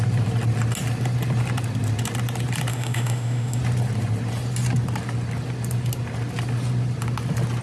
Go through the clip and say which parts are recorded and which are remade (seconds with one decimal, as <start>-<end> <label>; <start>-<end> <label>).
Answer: 0.0-2.7 recorded; 2.7-3.6 remade; 3.6-7.6 recorded

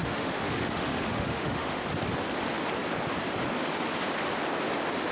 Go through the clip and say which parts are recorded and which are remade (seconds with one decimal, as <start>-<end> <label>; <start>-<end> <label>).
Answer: 0.0-1.8 remade; 1.8-5.1 recorded

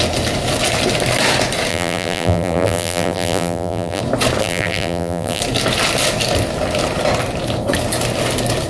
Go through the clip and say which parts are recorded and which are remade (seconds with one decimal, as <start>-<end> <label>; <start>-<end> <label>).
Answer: 0.0-1.7 recorded; 1.7-4.0 remade; 4.0-4.4 recorded; 4.4-5.4 remade; 5.4-8.7 recorded